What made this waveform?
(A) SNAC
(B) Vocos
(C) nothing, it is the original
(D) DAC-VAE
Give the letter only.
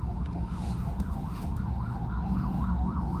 D